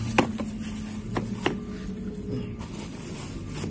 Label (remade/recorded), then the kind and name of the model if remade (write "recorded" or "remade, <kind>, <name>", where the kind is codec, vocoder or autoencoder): recorded